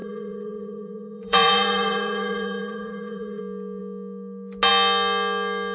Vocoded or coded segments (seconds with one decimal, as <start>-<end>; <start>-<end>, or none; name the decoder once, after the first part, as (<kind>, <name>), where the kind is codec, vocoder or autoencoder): 0.0-3.4 (vocoder, Vocos)